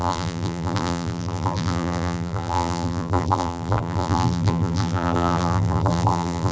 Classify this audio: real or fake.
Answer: fake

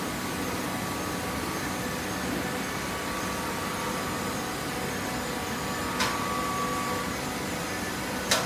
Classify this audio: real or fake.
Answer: real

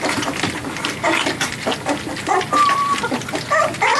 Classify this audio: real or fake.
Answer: real